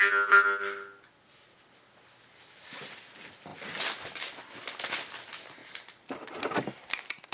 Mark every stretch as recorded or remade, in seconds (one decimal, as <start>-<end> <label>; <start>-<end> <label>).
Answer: 0.0-7.3 recorded